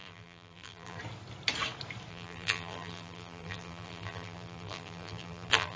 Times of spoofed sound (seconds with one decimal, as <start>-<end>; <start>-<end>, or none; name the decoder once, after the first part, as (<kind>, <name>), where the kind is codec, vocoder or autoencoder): 0.0-1.0 (vocoder, BigVGAN v2); 2.1-5.8